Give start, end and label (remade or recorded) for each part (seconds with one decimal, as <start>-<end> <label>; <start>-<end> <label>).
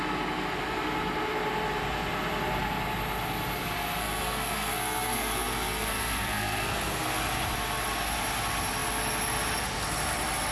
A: 0.0-4.0 recorded; 4.0-7.2 remade; 7.2-10.5 recorded